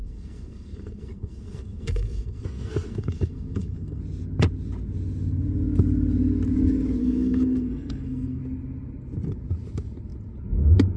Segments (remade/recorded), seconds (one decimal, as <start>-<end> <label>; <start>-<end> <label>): 0.0-4.0 remade; 4.0-7.0 recorded; 7.0-8.4 remade; 8.4-11.0 recorded

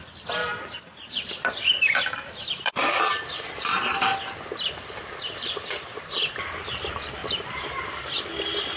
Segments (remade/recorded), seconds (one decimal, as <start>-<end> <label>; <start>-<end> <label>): 0.0-4.1 remade; 4.1-5.0 recorded; 5.0-7.2 remade; 7.2-7.8 recorded; 7.8-8.8 remade

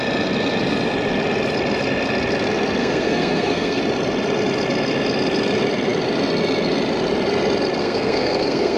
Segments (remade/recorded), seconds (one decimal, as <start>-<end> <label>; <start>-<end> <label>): 0.0-2.8 recorded; 2.8-3.8 remade; 3.8-7.8 recorded; 7.8-8.8 remade

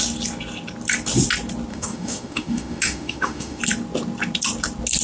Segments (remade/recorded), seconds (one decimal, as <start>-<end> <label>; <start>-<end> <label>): 0.0-1.7 recorded; 1.7-3.6 remade; 3.6-5.0 recorded